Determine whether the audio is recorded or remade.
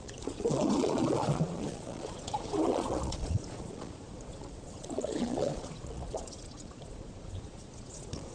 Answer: remade